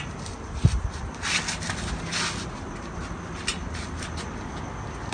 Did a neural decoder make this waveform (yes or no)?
no